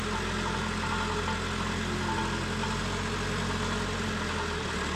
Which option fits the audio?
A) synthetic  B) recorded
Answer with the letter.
B